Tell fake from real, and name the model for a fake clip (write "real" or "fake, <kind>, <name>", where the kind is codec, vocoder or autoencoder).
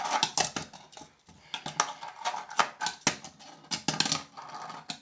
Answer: real